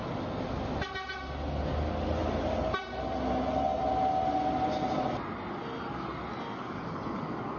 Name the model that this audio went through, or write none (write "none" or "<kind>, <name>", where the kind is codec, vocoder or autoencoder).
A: none